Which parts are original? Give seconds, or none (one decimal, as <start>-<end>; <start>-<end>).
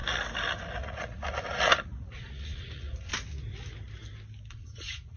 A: 0.0-0.8; 3.1-4.5